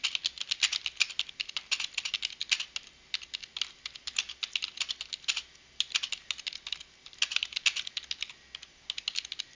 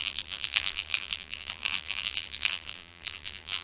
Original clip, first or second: first